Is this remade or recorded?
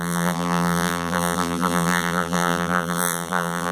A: remade